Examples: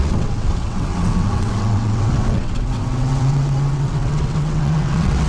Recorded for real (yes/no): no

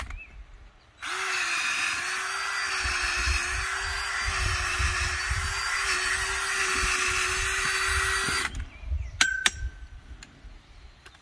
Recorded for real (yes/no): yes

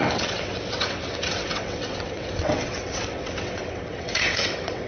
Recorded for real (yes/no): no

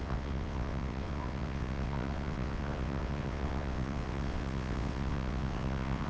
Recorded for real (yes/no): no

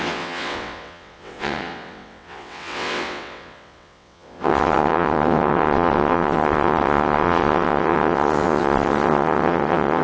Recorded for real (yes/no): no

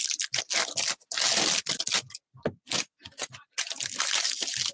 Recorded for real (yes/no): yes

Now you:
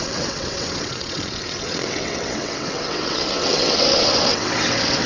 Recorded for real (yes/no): no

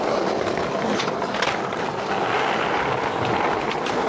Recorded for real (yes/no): yes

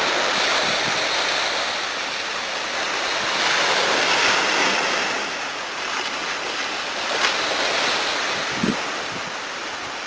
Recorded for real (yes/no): yes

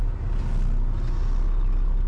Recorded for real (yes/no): yes